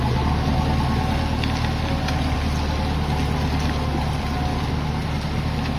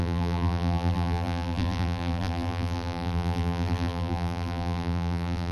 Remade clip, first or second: second